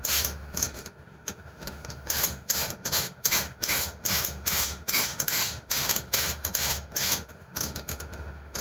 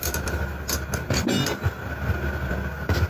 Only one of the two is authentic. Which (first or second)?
second